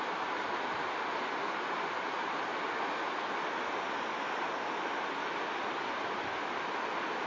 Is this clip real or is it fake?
real